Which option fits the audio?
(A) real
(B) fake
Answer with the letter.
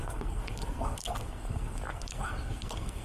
B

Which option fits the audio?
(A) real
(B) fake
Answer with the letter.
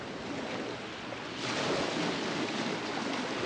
A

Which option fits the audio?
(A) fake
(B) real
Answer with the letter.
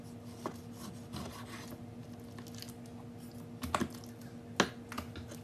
B